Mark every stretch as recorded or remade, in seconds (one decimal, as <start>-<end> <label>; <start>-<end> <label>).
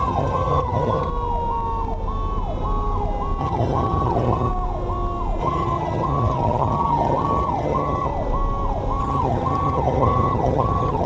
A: 0.0-1.1 remade; 1.1-3.4 recorded; 3.4-4.5 remade; 4.5-5.4 recorded; 5.4-8.1 remade; 8.1-9.0 recorded; 9.0-11.1 remade